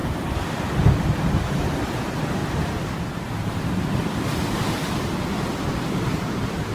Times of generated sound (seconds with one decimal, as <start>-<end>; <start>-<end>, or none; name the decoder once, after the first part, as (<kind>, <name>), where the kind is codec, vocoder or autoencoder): 2.4-4.9 (vocoder, BigVGAN v2)